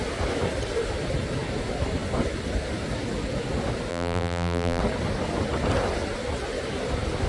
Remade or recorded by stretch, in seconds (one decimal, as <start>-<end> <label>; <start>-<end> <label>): 0.0-3.9 recorded; 3.9-4.8 remade; 4.8-7.3 recorded